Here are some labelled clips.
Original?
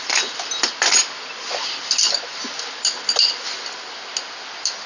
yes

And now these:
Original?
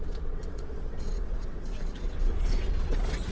no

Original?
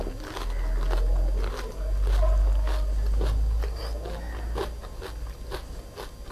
yes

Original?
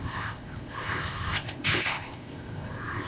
no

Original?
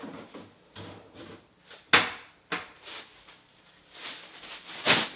yes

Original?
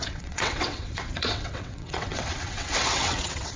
no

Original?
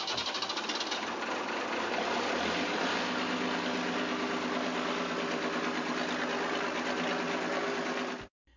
yes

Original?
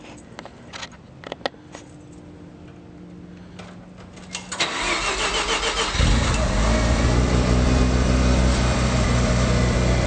yes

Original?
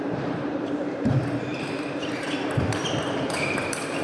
no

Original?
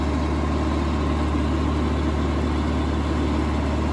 yes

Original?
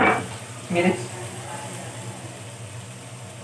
yes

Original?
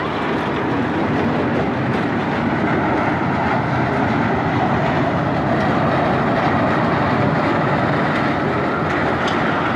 yes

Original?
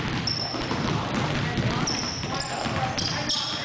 yes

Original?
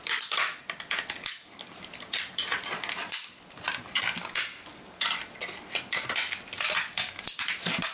yes